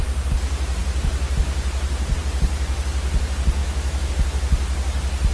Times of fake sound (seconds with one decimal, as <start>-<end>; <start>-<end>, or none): 3.6-4.1